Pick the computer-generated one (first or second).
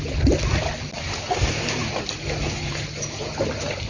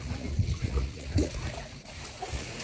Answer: second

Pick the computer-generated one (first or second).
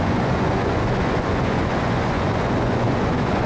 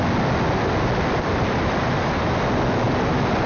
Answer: first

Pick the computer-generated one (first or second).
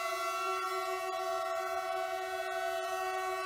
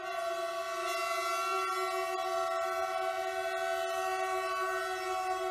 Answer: first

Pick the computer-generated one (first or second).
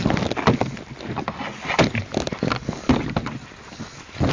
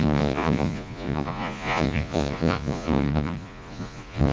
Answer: second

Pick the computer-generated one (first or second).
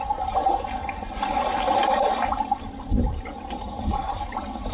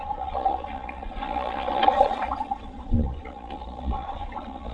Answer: second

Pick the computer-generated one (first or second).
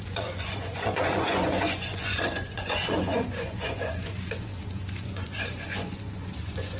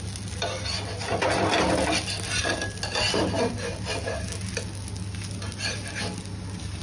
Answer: first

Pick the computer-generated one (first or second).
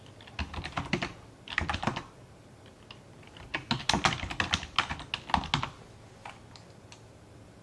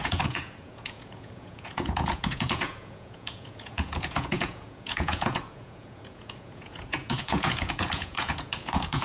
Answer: second